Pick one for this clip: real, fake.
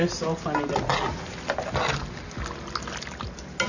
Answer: real